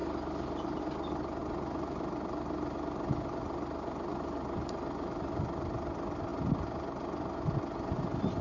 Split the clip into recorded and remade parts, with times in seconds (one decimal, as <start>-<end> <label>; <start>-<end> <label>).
0.0-8.4 recorded